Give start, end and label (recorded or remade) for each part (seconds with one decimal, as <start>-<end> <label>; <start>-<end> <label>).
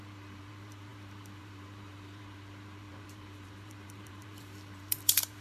0.0-5.4 remade